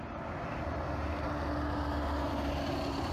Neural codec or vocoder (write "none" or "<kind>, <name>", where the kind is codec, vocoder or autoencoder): none